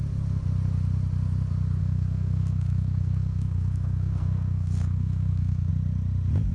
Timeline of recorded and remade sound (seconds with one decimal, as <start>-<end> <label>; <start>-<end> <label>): 0.0-1.8 recorded; 1.8-5.7 remade; 5.7-6.5 recorded